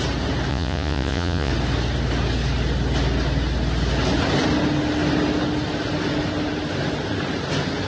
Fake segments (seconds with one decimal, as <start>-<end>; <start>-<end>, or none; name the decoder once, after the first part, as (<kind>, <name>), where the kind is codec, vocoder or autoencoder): 0.5-1.5 (vocoder, Vocos)